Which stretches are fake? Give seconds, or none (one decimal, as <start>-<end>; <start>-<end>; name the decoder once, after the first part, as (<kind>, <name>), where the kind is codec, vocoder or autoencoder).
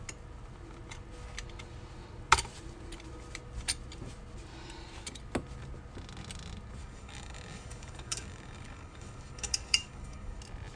6.8-10.4 (codec, DAC)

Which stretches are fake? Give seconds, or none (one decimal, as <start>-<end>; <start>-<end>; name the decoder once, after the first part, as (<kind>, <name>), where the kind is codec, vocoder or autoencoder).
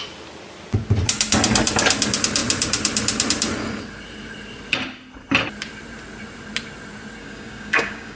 7.2-8.2 (codec, DAC)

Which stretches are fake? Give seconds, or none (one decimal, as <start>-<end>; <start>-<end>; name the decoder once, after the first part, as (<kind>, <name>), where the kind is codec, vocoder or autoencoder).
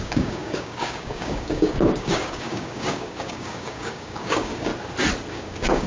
0.0-4.7 (codec, DAC); 5.3-5.9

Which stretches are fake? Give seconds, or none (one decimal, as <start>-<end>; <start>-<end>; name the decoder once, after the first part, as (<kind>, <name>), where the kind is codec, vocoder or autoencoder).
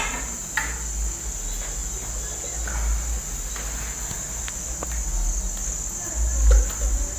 none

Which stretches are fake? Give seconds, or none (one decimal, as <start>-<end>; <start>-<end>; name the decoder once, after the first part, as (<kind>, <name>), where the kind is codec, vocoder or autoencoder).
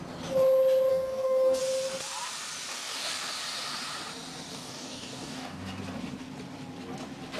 0.9-1.6 (codec, DAC); 2.7-3.3; 4.5-5.8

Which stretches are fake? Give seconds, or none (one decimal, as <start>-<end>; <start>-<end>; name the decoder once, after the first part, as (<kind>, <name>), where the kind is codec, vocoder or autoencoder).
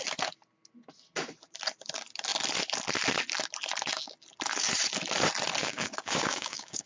5.6-6.9 (codec, DAC)